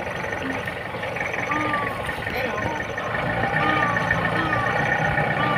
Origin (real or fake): real